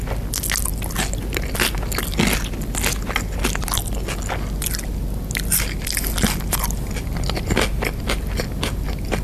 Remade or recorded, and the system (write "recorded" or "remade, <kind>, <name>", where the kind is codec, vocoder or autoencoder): recorded